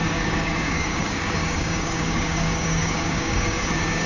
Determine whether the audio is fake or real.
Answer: fake